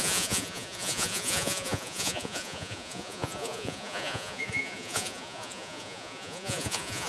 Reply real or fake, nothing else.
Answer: fake